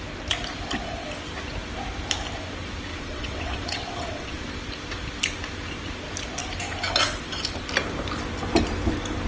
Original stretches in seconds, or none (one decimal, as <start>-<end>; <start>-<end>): 0.0-2.9; 4.4-9.3